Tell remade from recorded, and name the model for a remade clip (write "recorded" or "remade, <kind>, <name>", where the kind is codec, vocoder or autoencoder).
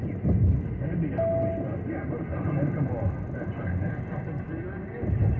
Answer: recorded